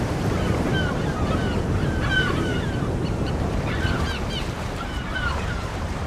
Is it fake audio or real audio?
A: fake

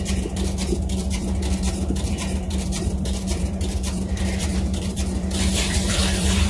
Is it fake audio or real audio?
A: fake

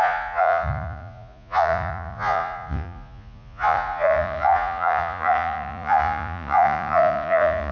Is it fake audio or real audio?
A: fake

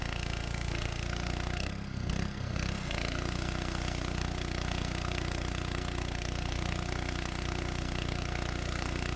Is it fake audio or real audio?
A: fake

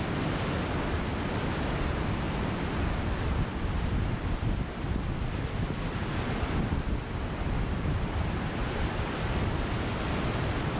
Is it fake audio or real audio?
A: real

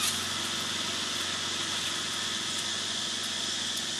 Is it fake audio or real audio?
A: fake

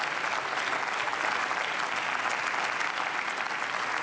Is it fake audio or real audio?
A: real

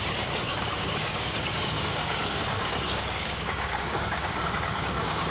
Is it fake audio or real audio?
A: fake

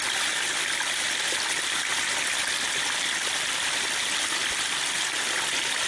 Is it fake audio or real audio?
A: real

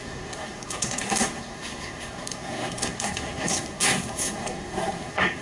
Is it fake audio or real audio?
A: fake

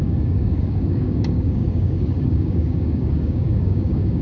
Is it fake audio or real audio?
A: fake